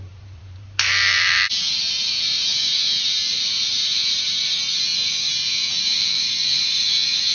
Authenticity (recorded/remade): remade